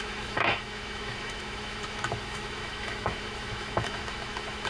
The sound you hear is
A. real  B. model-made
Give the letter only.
B